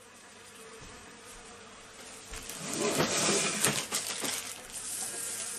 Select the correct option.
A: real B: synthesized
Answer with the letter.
A